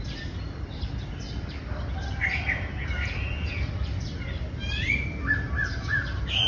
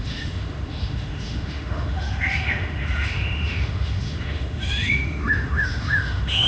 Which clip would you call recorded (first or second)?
first